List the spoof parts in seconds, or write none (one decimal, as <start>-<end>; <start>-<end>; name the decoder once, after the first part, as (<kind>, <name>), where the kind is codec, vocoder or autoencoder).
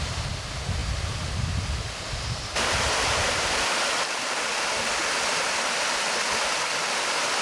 none